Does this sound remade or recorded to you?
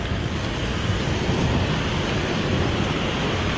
recorded